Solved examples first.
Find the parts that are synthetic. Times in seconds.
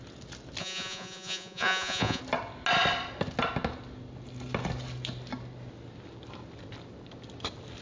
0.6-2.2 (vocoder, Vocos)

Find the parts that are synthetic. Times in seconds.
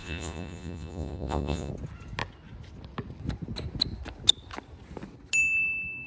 0.0-1.7 (vocoder, Vocos)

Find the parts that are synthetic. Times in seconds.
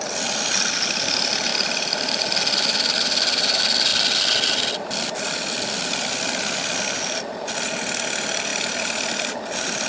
none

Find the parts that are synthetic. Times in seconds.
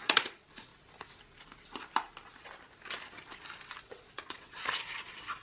0.0-0.7 (vocoder, Vocos); 3.8-5.4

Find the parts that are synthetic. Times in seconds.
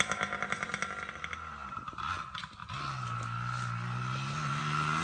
none